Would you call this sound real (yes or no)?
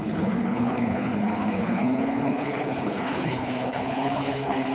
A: no